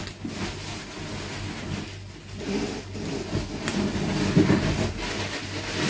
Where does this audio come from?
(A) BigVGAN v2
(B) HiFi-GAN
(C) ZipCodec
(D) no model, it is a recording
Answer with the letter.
D